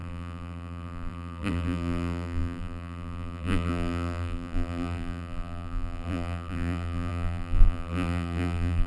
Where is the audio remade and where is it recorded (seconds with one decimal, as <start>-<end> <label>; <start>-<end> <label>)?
0.0-8.9 remade